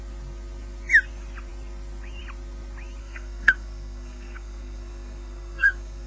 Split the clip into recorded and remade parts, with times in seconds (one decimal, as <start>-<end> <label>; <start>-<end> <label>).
0.0-3.0 recorded; 3.0-6.1 remade